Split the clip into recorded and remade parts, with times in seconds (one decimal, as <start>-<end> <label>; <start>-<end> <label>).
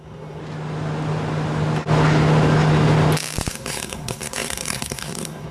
0.0-0.4 remade; 0.4-3.5 recorded; 3.5-5.5 remade